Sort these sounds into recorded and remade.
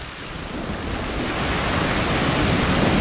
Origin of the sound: recorded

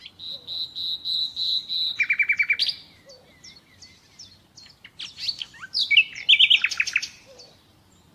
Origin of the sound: recorded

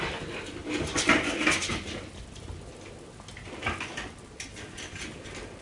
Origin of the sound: recorded